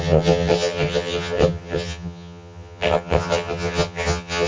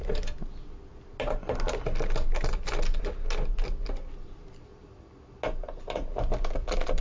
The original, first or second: second